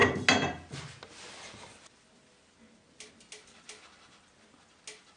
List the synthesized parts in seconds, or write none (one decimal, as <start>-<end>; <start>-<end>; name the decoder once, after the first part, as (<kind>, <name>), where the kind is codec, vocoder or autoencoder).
none

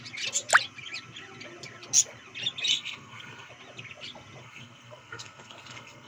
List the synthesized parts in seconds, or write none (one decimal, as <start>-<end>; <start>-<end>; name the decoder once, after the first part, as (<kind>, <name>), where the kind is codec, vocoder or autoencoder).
2.7-3.5 (codec, SNAC); 4.4-6.1

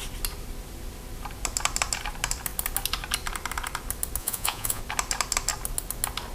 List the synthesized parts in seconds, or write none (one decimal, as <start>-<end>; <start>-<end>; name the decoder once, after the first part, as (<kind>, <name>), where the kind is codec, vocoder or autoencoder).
4.2-4.8 (vocoder, Vocos)

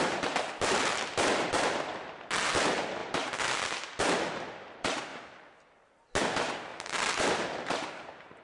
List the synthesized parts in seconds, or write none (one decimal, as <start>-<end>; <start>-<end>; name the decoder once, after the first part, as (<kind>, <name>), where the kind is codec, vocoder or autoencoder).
0.0-5.1 (vocoder, BigVGAN v2); 6.2-6.7; 7.2-8.4

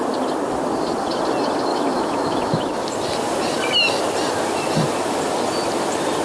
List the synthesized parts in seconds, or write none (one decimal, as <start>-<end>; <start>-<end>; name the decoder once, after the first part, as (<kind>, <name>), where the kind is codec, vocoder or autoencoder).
1.7-2.7 (autoencoder, DAC-VAE)

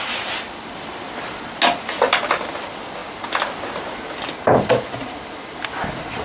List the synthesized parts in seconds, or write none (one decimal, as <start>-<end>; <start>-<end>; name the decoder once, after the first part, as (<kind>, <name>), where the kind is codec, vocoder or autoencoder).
none

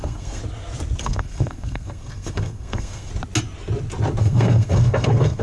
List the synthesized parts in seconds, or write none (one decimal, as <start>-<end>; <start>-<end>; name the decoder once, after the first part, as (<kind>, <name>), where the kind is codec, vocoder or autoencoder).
0.0-0.4 (codec, SNAC); 1.0-3.1; 4.2-5.4